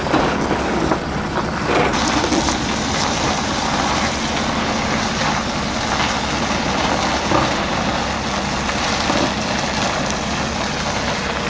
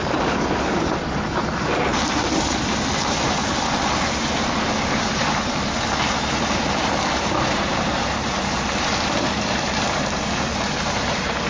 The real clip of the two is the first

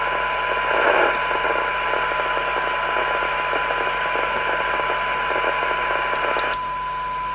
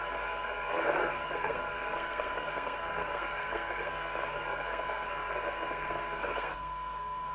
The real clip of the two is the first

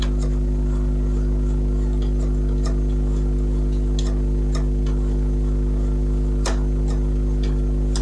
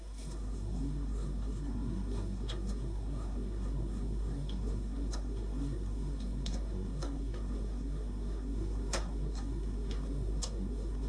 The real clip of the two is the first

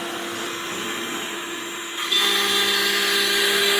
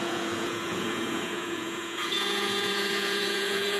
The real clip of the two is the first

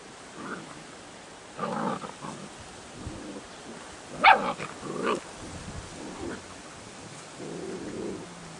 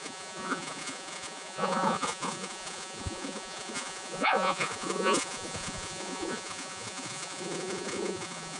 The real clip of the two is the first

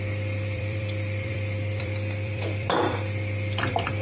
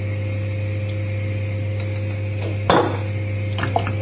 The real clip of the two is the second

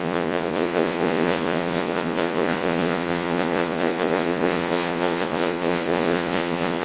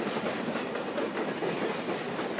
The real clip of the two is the second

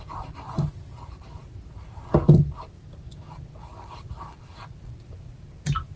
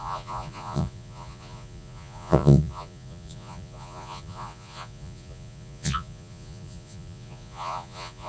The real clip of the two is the first